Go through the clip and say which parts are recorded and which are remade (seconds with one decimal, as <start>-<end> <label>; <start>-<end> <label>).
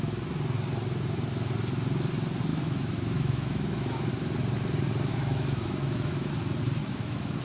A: 0.0-2.5 recorded; 2.5-4.1 remade; 4.1-5.1 recorded; 5.1-6.3 remade; 6.3-6.8 recorded; 6.8-7.4 remade